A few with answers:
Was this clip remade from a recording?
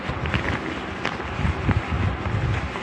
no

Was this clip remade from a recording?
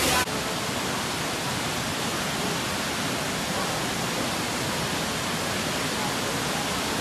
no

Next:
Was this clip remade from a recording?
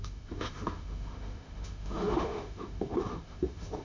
yes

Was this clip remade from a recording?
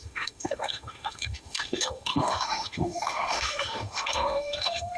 yes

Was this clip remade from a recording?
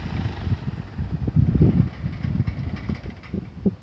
no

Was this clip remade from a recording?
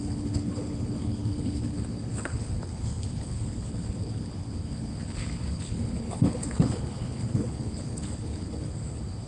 yes